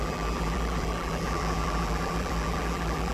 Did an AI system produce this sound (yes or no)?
yes